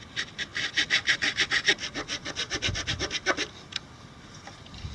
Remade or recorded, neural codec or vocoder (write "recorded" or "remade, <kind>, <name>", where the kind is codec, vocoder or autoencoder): recorded